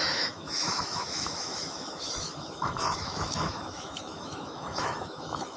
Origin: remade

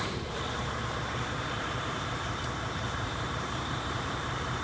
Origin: remade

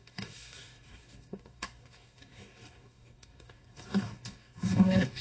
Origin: remade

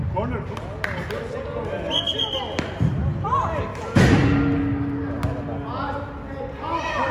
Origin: recorded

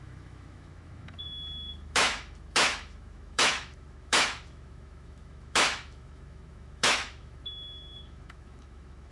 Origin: remade